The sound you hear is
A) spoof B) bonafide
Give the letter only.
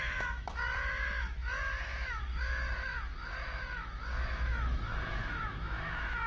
A